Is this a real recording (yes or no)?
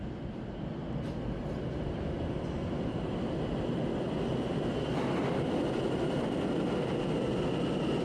yes